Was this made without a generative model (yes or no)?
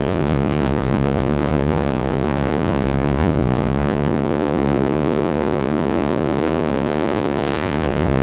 no